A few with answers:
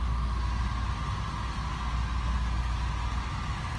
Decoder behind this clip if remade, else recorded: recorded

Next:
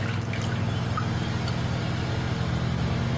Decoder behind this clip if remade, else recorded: recorded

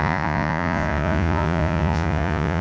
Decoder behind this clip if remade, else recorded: remade, vocoder, Vocos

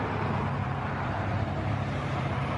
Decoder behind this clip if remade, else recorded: recorded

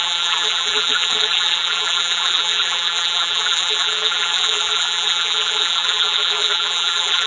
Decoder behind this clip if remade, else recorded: remade, vocoder, BigVGAN v2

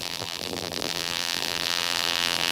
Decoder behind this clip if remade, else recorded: remade, vocoder, BigVGAN v2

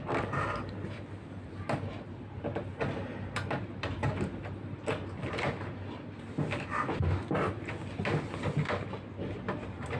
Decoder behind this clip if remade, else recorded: recorded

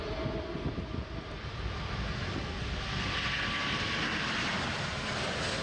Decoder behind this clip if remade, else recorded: recorded